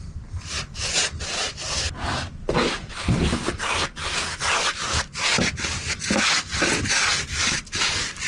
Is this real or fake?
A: real